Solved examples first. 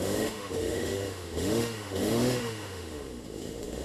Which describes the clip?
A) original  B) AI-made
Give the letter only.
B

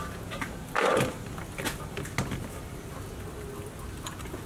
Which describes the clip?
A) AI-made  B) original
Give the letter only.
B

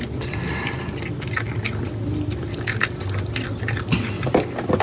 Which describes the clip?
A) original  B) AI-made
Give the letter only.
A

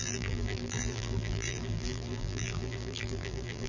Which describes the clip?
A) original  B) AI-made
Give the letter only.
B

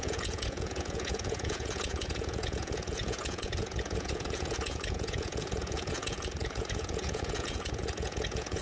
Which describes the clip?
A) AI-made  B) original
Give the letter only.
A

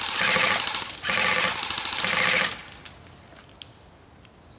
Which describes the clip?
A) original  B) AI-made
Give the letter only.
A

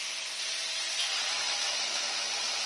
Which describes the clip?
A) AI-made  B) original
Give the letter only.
B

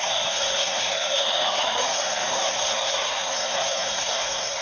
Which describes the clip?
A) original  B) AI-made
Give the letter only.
B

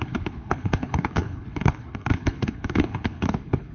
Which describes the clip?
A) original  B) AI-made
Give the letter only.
B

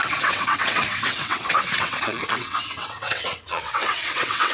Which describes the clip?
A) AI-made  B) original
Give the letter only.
A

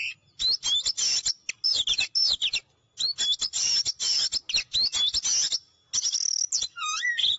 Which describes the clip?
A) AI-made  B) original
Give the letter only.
B